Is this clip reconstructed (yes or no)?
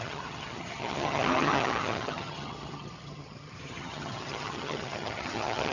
yes